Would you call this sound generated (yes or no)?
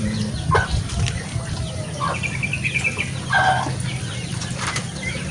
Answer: no